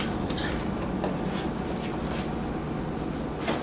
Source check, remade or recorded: recorded